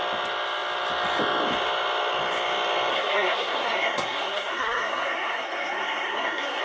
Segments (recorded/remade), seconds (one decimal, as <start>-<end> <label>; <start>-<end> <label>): 0.0-2.9 recorded; 2.9-6.6 remade